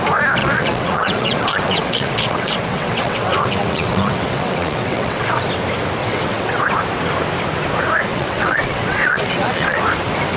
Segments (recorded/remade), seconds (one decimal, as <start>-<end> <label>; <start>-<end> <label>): 0.0-0.4 recorded; 0.4-5.4 remade; 5.4-6.0 recorded; 6.0-6.6 remade; 6.6-8.1 recorded; 8.1-9.8 remade; 9.8-10.4 recorded